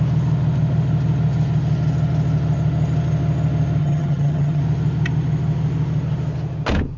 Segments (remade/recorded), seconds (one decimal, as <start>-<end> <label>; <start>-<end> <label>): 0.0-3.8 recorded; 3.8-4.6 remade; 4.6-7.0 recorded

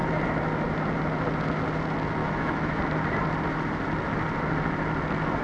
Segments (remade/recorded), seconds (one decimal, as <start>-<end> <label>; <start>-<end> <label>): 0.0-2.2 recorded; 2.2-2.8 remade; 2.8-5.4 recorded

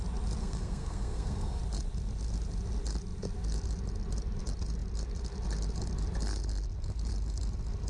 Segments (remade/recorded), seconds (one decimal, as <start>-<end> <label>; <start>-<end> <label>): 0.0-0.4 recorded; 0.4-1.6 remade; 1.6-7.9 recorded

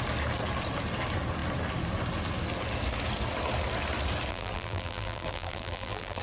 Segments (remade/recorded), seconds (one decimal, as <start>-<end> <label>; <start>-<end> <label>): 0.0-4.3 recorded; 4.3-6.2 remade

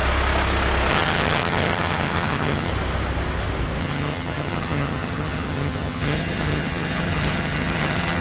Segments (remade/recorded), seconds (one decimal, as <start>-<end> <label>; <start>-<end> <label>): 0.0-0.9 recorded; 0.9-2.7 remade; 2.7-3.8 recorded; 3.8-8.2 remade